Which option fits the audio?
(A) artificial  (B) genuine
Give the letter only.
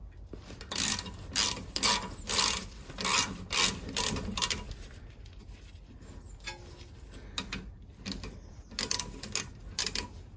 B